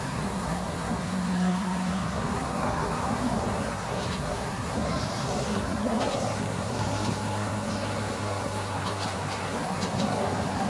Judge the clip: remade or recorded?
remade